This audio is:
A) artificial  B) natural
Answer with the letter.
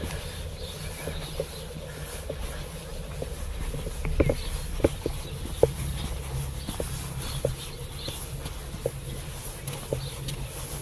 B